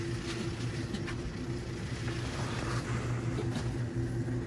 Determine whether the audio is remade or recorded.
recorded